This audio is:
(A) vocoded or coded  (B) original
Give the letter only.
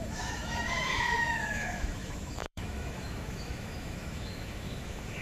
A